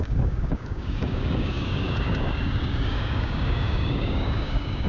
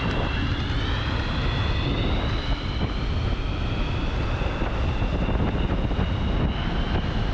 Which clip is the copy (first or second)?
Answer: first